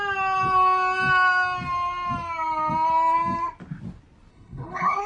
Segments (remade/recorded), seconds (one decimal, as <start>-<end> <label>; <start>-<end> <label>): 0.0-4.3 recorded; 4.3-5.1 remade